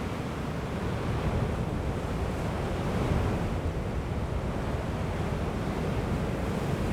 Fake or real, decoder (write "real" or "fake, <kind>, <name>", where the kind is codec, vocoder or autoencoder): real